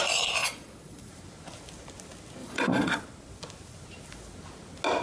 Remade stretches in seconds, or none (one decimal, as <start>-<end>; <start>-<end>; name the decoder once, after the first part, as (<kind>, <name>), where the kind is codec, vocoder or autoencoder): 0.4-1.1 (vocoder, Vocos); 2.4-3.0